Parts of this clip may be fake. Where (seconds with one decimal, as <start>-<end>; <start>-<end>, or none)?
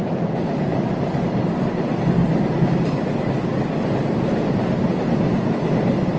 0.0-1.4